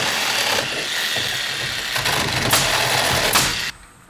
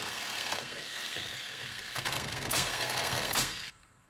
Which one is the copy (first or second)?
second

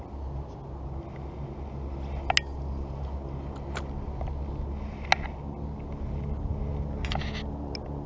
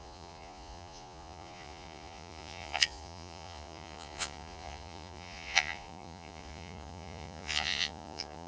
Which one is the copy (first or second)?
second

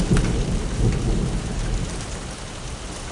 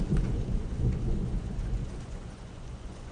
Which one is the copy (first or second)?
second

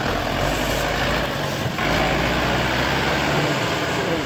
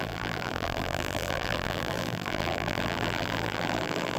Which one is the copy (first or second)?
second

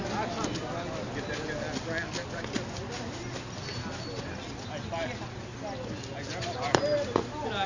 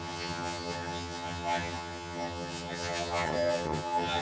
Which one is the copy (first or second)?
second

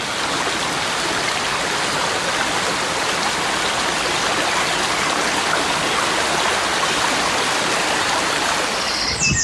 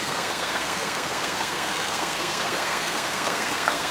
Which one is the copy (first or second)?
second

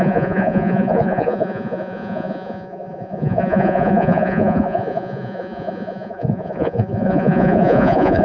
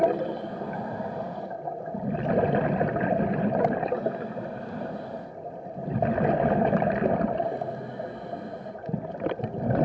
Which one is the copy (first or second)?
first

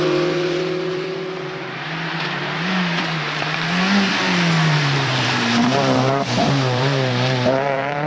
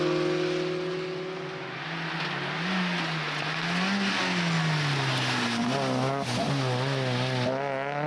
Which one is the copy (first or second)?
first